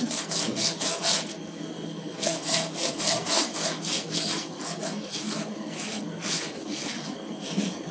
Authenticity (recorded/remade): remade